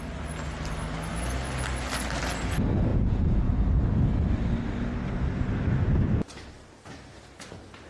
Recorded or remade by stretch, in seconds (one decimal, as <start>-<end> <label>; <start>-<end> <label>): 0.0-2.9 recorded; 2.9-3.5 remade; 3.5-7.9 recorded